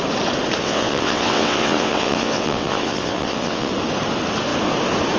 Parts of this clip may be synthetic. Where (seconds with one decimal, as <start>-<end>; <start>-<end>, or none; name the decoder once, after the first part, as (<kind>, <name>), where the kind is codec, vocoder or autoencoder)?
0.6-3.7 (vocoder, WaveNeXt)